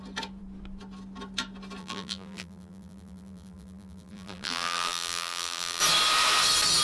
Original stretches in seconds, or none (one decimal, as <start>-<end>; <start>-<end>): 0.0-1.8; 5.8-6.8